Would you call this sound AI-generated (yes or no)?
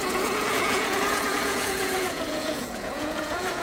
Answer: yes